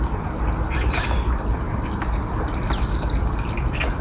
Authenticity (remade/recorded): recorded